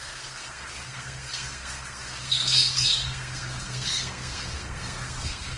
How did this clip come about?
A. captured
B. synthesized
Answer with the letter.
B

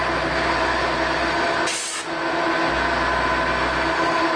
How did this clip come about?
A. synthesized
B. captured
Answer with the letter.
B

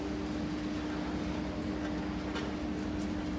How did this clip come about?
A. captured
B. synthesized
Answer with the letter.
A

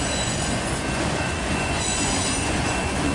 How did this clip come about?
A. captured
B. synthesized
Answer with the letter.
B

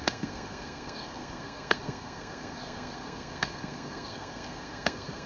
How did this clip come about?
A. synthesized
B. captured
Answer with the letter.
A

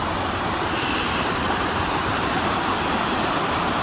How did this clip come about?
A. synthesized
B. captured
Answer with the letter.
A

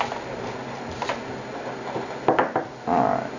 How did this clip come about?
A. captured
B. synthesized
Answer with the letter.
A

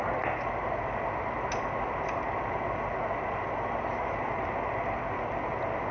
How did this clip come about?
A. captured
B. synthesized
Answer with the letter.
A